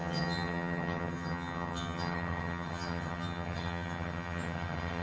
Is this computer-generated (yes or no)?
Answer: yes